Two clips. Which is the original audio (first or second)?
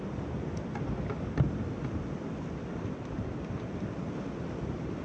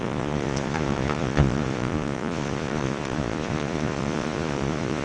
first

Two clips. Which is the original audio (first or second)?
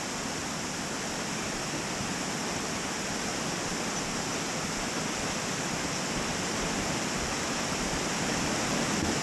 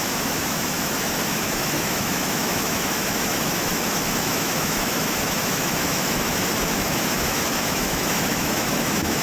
first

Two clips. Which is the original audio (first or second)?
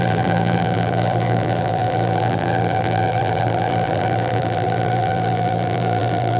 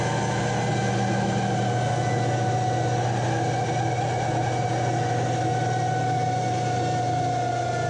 second